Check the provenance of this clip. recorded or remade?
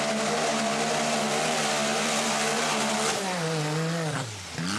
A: recorded